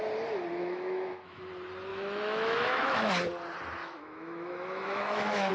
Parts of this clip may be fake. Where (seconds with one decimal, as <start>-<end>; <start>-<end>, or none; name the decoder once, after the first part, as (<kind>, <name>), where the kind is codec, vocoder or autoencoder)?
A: 0.6-1.4 (autoencoder, DAC-VAE); 1.9-3.1; 3.8-5.5